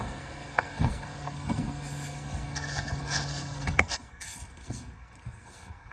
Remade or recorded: remade